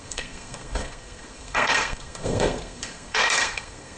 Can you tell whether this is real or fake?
fake